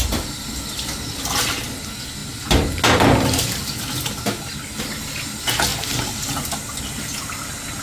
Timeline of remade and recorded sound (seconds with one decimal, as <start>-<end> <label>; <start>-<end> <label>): 0.0-7.8 recorded